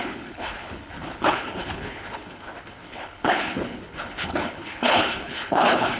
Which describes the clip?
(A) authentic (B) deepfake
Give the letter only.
B